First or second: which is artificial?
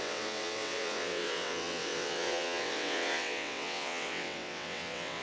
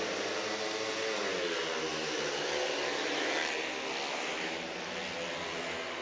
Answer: first